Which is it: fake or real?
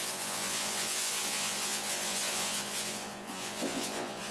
fake